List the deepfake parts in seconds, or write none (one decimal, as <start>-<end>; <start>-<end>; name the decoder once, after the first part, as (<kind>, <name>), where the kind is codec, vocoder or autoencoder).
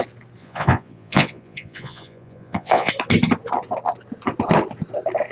0.4-2.9 (vocoder, Vocos)